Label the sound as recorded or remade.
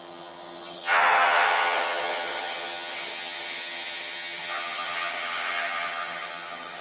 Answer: remade